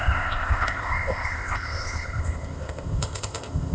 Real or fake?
fake